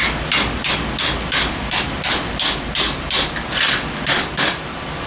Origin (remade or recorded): recorded